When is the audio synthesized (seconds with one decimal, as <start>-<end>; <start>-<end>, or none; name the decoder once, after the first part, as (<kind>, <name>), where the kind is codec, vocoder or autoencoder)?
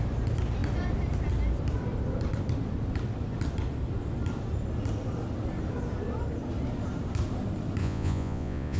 7.8-8.8 (vocoder, Vocos)